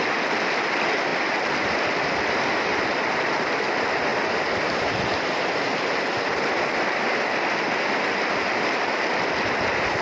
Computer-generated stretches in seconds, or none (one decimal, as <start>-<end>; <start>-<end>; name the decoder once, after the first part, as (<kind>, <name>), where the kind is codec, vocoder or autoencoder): none